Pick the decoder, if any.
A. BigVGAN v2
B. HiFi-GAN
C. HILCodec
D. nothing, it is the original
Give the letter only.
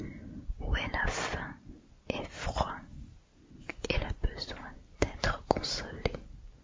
D